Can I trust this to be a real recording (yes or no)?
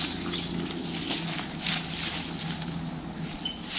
yes